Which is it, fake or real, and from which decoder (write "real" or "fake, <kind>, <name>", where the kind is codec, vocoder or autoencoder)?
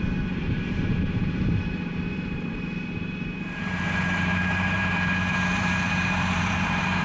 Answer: fake, vocoder, BigVGAN v2